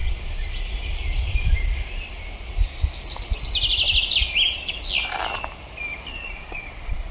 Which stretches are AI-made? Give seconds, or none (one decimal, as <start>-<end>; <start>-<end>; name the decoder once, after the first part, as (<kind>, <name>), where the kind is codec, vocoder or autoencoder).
0.0-0.7 (vocoder, Vocos); 6.1-7.1